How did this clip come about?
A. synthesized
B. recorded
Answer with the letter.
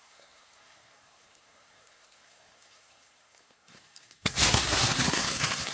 A